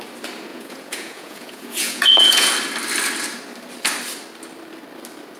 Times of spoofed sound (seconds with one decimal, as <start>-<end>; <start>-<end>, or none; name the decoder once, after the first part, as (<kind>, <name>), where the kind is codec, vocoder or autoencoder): 0.5-2.5 (vocoder, Vocos)